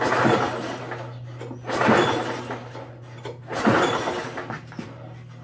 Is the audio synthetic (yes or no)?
no